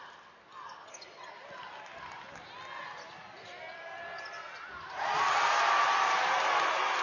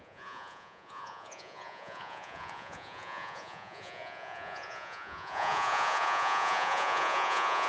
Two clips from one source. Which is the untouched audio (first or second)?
first